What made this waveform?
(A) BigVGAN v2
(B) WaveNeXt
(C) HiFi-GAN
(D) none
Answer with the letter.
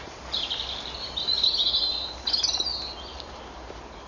D